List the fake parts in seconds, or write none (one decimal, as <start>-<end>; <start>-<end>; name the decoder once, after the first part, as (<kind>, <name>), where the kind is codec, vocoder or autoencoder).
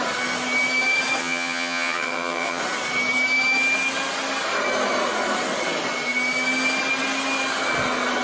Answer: 1.2-2.6 (vocoder, HiFi-GAN)